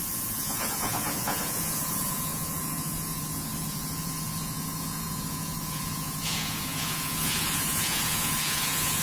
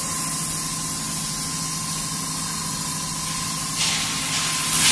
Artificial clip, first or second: first